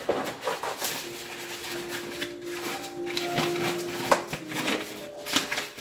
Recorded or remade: recorded